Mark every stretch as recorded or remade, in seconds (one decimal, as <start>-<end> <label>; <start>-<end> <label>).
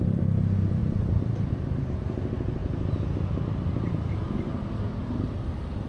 0.0-0.8 recorded; 0.8-1.5 remade; 1.5-5.9 recorded